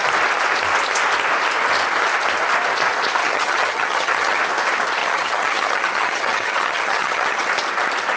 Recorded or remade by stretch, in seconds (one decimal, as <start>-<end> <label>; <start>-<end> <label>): 0.0-3.2 recorded; 3.2-4.4 remade; 4.4-5.0 recorded; 5.0-7.5 remade; 7.5-8.2 recorded